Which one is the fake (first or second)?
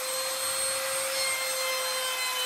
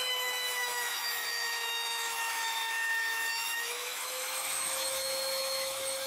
second